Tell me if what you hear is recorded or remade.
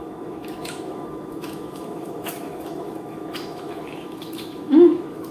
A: remade